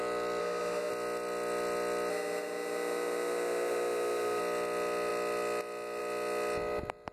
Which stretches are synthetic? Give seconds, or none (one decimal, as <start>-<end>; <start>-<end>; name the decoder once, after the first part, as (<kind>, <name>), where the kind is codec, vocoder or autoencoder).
0.4-0.9 (autoencoder, DAC-VAE); 2.1-4.4